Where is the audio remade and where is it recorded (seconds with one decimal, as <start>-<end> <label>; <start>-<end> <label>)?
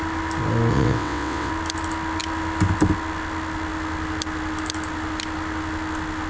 0.0-0.7 recorded; 0.7-1.5 remade; 1.5-6.3 recorded